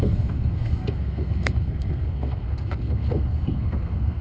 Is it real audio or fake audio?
fake